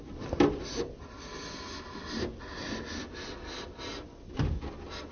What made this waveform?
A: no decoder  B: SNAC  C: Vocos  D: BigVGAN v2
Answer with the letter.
A